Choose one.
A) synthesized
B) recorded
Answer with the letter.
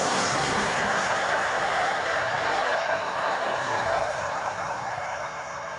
A